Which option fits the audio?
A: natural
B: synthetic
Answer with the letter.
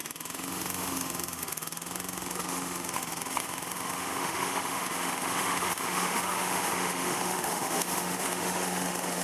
B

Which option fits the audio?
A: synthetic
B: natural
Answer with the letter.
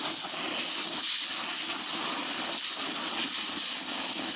B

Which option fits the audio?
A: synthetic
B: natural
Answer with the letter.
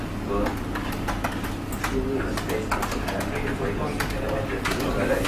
B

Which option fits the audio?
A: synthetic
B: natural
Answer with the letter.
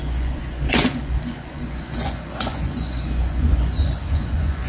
A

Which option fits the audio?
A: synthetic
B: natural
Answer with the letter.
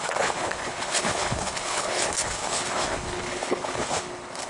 A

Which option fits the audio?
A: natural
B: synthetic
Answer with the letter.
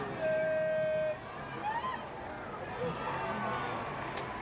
A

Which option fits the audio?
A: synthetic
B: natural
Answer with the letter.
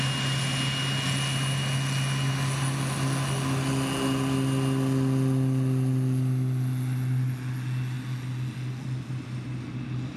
B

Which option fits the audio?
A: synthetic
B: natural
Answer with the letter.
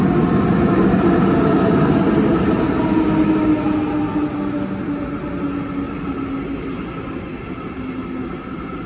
B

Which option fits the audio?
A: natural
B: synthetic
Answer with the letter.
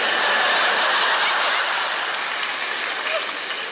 A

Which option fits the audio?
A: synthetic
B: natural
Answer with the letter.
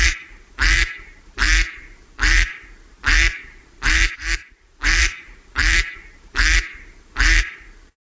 A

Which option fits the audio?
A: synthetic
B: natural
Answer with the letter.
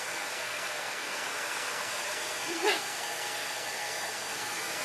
A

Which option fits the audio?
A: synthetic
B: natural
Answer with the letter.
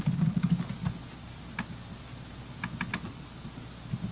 B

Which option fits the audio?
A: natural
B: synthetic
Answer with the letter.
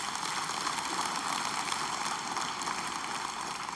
A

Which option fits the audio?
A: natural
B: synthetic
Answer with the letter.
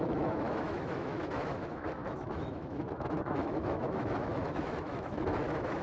B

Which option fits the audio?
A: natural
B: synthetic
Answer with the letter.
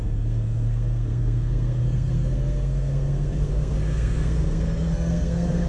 B